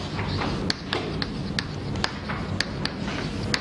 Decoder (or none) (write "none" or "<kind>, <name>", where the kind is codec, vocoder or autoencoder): none